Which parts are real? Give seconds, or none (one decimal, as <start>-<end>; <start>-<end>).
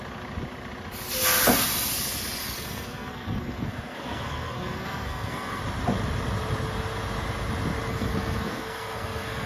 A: 0.0-2.4; 5.6-7.9